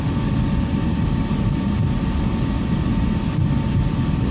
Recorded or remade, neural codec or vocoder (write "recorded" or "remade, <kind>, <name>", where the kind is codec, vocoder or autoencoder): recorded